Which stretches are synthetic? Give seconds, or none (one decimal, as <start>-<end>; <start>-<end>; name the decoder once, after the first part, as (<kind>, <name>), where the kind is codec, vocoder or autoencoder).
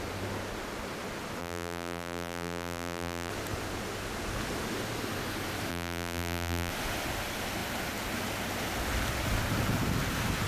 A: 1.4-3.3 (vocoder, BigVGAN v2); 5.7-6.7